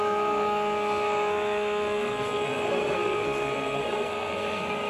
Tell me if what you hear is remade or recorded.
remade